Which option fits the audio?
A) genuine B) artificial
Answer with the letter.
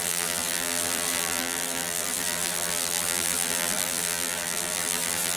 B